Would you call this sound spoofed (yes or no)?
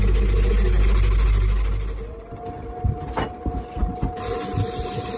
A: no